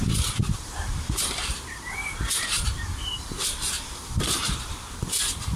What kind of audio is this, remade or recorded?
remade